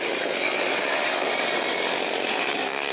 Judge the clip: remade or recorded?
remade